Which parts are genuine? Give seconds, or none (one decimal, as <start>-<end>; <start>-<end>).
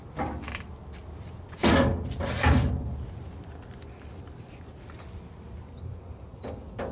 1.0-1.6; 2.8-6.9